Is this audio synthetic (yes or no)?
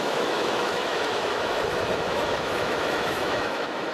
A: yes